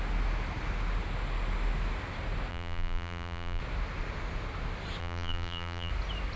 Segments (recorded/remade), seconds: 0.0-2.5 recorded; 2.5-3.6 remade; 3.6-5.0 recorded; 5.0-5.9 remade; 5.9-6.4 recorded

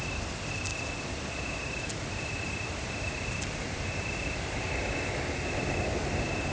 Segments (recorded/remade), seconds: 0.0-0.7 recorded; 0.7-4.6 remade; 4.6-6.5 recorded

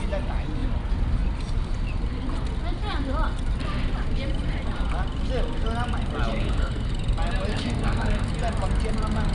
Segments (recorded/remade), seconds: 0.0-6.3 recorded; 6.3-6.9 remade; 6.9-7.5 recorded; 7.5-8.3 remade; 8.3-9.3 recorded

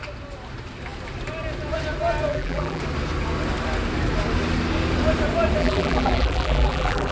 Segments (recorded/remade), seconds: 0.0-2.3 recorded; 2.3-2.8 remade; 2.8-5.6 recorded; 5.6-7.1 remade

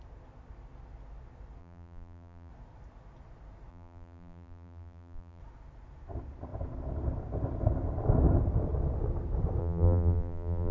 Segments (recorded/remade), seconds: 0.0-1.6 recorded; 1.6-2.5 remade; 2.5-3.7 recorded; 3.7-5.4 remade; 5.4-9.6 recorded; 9.6-10.7 remade